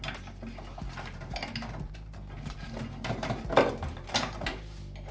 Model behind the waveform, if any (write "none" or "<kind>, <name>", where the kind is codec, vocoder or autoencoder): none